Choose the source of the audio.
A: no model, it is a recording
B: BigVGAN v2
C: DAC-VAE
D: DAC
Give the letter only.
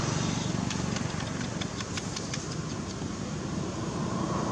A